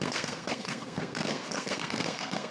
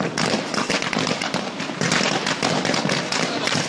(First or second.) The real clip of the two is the second